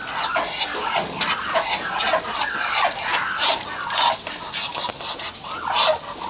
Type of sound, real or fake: real